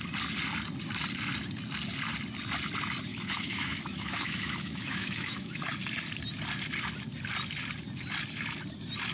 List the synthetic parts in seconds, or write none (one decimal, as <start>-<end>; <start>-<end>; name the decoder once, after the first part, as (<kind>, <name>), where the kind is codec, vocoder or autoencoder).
3.1-5.6 (autoencoder, DAC-VAE)